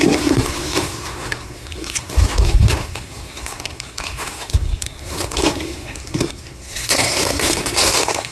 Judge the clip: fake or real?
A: fake